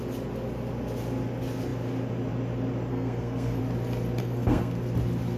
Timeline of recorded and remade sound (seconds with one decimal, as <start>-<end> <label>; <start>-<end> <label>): 0.0-2.9 recorded; 2.9-3.6 remade; 3.6-4.2 recorded; 4.2-4.7 remade; 4.7-5.4 recorded